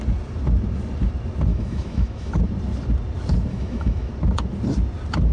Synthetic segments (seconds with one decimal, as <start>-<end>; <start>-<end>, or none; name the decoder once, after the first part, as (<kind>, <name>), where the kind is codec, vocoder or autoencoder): 1.5-2.3 (autoencoder, DAC-VAE); 3.5-4.1